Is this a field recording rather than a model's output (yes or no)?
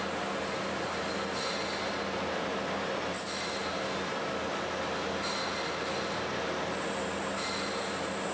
yes